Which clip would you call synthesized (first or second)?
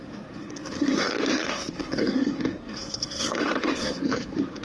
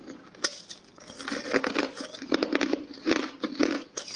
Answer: first